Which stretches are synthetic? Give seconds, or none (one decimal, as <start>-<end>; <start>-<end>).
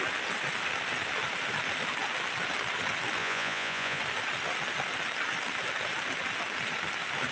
3.2-4.0